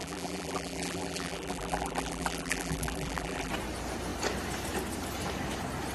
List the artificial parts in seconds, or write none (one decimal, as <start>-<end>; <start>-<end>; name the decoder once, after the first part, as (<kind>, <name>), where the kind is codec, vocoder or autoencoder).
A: 0.0-3.5 (vocoder, BigVGAN v2)